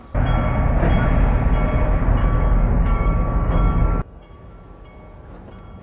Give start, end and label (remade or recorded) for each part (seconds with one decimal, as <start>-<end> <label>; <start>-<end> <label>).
0.0-2.2 recorded; 2.2-4.5 remade; 4.5-5.8 recorded